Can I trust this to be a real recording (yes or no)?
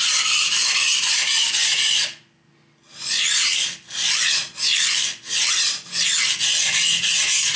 yes